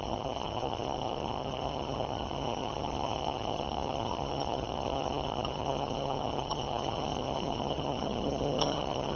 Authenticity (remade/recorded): remade